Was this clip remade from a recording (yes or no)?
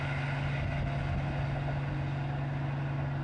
no